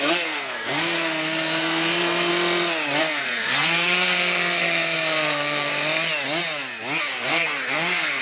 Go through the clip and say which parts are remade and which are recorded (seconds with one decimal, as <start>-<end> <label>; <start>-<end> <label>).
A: 0.0-2.3 remade; 2.3-3.0 recorded; 3.0-5.7 remade; 5.7-7.0 recorded; 7.0-8.2 remade